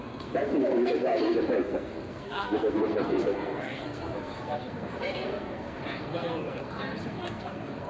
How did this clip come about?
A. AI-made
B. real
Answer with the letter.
A